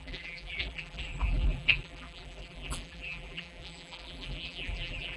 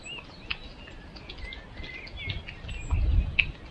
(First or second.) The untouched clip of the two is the second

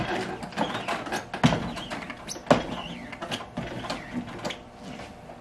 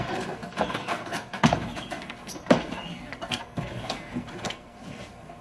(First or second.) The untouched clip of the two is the first